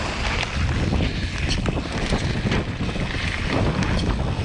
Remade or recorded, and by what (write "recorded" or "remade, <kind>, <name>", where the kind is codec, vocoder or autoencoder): recorded